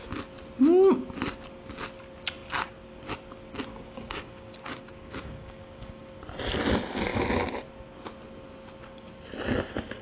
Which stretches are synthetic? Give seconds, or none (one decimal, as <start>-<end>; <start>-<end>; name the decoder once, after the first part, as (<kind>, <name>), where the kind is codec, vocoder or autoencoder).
3.7-6.0 (codec, DAC)